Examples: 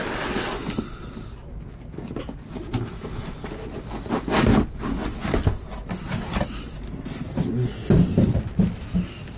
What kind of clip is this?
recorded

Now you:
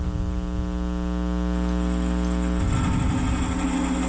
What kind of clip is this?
recorded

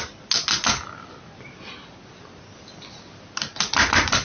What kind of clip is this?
recorded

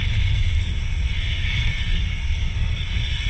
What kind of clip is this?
remade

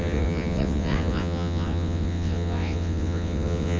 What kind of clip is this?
remade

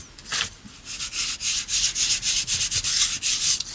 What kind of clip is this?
recorded